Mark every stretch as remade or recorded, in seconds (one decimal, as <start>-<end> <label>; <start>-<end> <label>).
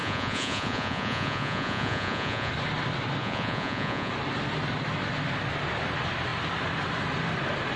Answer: 0.0-2.5 remade; 2.5-3.2 recorded; 3.2-4.1 remade; 4.1-7.8 recorded